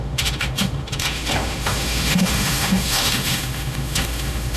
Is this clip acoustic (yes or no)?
no